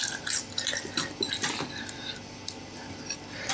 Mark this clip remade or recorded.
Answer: recorded